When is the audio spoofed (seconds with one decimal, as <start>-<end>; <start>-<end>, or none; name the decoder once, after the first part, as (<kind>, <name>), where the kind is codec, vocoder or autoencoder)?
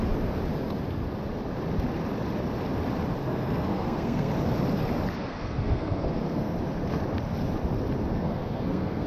3.2-4.3 (codec, SNAC); 5.3-6.6; 8.1-9.1